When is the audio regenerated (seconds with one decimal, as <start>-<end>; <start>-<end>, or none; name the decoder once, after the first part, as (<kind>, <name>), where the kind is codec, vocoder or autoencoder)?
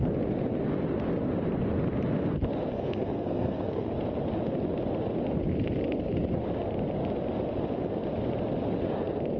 2.7-3.9 (codec, SNAC)